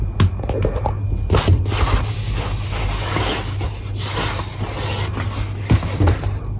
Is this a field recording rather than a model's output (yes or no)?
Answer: yes